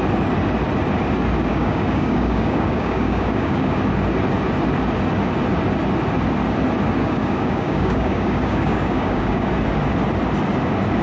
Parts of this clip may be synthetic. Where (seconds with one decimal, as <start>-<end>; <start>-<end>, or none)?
1.5-3.8; 7.0-9.5